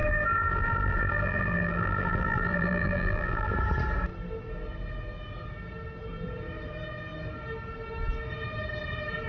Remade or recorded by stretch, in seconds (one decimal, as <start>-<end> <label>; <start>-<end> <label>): 0.0-3.5 remade; 3.5-9.3 recorded